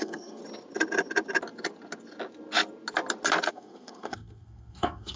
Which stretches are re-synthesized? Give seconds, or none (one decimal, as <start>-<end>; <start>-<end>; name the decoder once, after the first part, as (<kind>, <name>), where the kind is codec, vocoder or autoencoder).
0.0-0.4 (codec, SNAC); 3.5-5.2